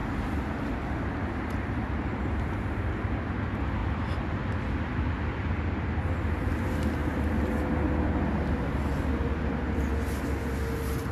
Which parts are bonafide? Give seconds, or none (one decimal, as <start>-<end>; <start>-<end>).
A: 0.0-11.1